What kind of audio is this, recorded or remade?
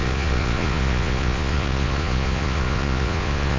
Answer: remade